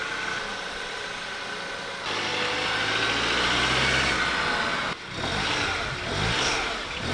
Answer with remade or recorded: recorded